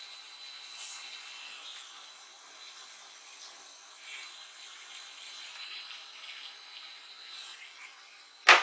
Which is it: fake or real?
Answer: real